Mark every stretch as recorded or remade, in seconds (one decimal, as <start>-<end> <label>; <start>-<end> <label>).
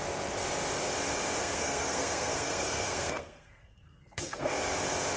0.0-1.4 recorded; 1.4-4.5 remade; 4.5-5.2 recorded